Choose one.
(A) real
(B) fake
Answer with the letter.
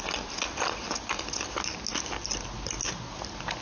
A